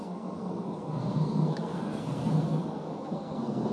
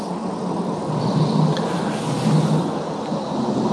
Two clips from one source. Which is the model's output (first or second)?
first